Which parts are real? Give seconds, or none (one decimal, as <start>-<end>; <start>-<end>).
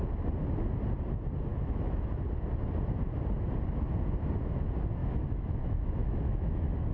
0.0-1.5; 2.1-5.0